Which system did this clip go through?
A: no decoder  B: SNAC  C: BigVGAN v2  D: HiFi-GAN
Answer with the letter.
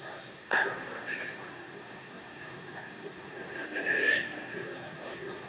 B